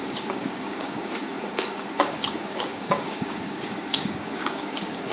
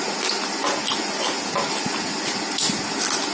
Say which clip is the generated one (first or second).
first